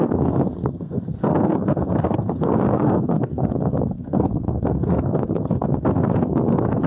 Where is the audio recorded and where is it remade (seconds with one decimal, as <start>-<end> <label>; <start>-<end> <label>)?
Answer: 0.0-6.9 remade